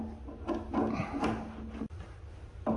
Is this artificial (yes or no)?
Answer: no